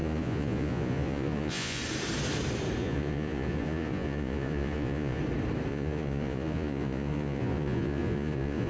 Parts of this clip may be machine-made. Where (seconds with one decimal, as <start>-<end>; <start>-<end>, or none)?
0.0-1.8; 2.8-5.2; 5.7-8.7